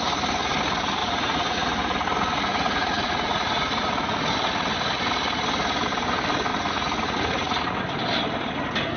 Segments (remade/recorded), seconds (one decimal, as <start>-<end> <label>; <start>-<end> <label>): 0.0-1.0 recorded; 1.0-1.8 remade; 1.8-2.5 recorded; 2.5-3.9 remade; 3.9-6.5 recorded; 6.5-7.8 remade; 7.8-9.0 recorded